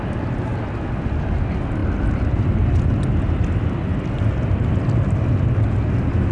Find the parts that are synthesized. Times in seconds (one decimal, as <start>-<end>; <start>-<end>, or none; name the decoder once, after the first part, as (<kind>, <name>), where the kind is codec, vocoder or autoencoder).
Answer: none